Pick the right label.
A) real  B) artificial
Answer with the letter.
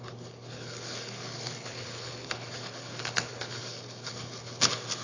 B